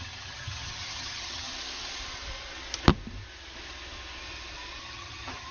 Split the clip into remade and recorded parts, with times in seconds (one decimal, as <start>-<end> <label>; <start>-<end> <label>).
0.0-1.5 remade; 1.5-4.8 recorded; 4.8-5.5 remade